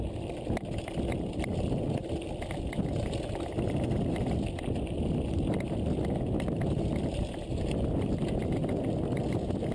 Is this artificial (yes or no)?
no